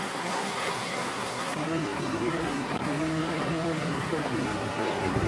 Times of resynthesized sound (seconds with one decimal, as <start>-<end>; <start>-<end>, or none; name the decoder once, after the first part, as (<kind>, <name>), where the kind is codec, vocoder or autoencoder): 0.0-5.3 (codec, SNAC)